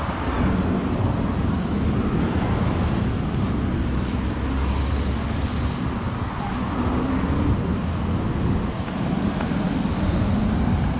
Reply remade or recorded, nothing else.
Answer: recorded